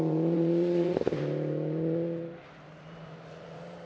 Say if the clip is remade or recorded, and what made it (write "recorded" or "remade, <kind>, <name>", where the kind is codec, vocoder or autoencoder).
remade, vocoder, BigVGAN v2